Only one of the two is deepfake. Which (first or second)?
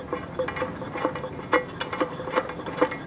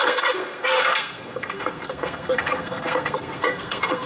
second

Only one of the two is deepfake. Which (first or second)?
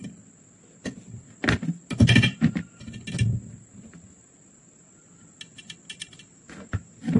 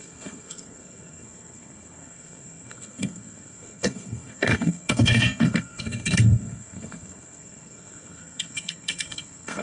second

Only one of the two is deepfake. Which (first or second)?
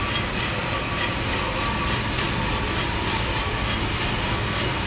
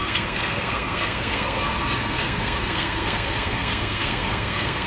second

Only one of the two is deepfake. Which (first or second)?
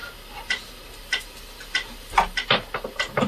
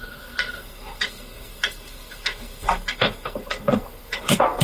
second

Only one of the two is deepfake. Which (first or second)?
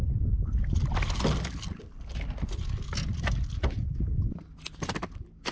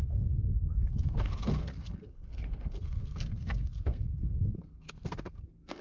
second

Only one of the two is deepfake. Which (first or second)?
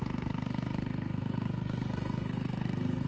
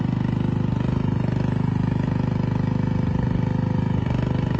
first